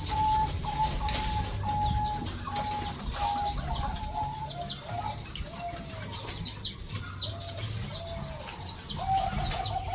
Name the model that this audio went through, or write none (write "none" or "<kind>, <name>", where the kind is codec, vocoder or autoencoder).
none